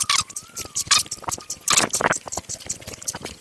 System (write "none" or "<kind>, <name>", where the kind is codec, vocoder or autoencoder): vocoder, BigVGAN v2